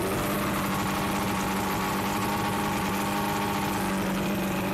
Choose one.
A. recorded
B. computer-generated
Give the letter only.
A